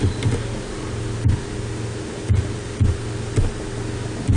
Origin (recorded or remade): recorded